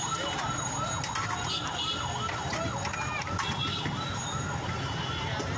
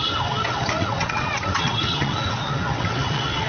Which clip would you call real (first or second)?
first